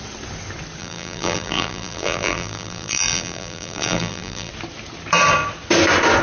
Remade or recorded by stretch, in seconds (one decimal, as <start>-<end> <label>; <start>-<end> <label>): 0.0-0.8 recorded; 0.8-4.5 remade; 4.5-6.2 recorded